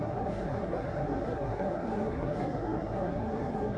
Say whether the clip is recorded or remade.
remade